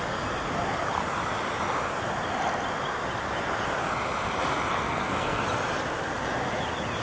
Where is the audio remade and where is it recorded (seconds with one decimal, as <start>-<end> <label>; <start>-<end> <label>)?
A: 0.0-4.7 recorded; 4.7-5.4 remade; 5.4-7.0 recorded